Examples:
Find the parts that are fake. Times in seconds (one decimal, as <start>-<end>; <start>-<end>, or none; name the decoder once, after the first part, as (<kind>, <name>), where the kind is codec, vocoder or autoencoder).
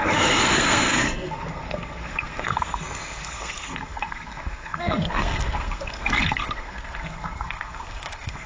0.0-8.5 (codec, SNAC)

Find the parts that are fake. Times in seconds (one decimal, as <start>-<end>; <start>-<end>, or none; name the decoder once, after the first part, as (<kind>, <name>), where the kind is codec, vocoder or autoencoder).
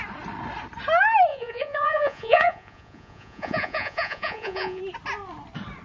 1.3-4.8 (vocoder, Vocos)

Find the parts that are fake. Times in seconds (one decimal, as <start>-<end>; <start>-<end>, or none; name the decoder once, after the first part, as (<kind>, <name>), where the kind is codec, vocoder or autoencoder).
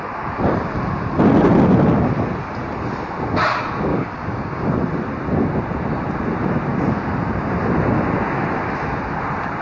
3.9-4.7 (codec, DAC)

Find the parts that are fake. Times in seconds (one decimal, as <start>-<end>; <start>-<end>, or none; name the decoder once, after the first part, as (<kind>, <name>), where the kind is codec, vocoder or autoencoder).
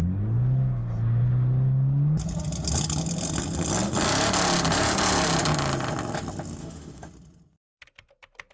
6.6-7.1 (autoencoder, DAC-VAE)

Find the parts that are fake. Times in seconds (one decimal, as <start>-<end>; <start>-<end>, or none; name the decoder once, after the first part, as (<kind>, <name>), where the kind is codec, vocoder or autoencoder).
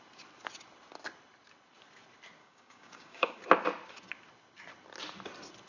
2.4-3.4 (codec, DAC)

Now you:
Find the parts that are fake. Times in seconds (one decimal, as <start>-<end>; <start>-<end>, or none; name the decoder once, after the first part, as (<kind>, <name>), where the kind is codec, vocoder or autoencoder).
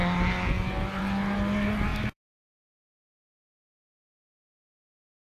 1.9-2.6 (vocoder, BigVGAN v2)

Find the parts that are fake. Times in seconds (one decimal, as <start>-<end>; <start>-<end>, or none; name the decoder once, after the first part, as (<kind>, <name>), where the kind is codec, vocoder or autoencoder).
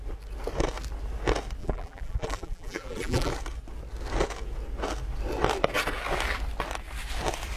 1.6-3.3 (vocoder, BigVGAN v2)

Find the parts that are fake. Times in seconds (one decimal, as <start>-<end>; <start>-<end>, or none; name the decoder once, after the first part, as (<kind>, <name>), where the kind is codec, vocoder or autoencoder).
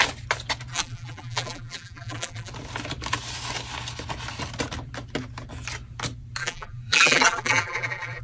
0.7-2.5 (vocoder, BigVGAN v2); 6.4-8.2